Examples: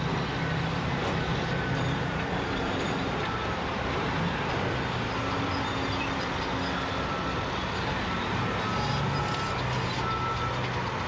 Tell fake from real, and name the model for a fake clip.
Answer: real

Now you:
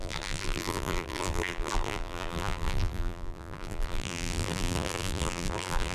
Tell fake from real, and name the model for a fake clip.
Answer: fake, vocoder, BigVGAN v2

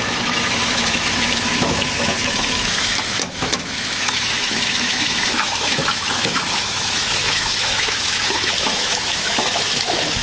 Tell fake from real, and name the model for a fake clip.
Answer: fake, autoencoder, DAC-VAE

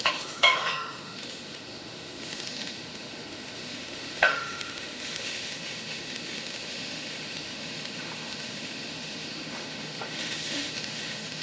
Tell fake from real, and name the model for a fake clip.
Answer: fake, autoencoder, DAC-VAE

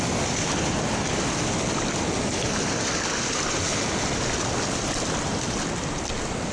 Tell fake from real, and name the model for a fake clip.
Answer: real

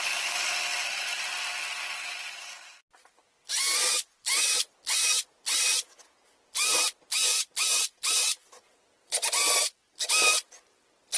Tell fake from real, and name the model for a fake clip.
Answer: real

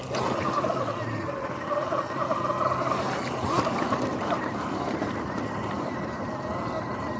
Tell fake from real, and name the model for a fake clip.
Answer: real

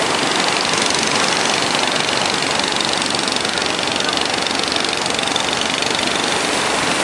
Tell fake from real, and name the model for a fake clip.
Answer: real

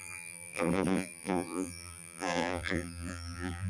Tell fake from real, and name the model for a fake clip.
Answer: fake, vocoder, BigVGAN v2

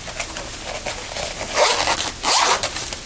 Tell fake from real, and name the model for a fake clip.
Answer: real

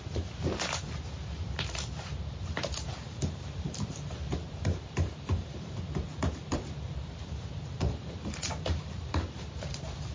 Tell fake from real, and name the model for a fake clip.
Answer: fake, vocoder, BigVGAN v2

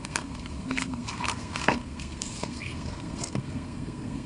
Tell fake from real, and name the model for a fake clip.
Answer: fake, codec, SNAC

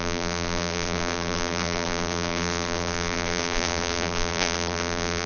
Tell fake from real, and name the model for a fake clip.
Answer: fake, vocoder, BigVGAN v2